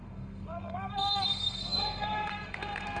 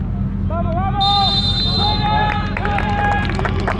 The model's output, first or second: first